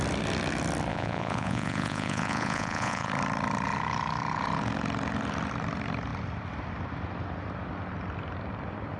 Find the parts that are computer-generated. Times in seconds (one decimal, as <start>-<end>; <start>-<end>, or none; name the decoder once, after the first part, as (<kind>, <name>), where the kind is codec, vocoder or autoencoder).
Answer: 0.9-3.1 (vocoder, Vocos)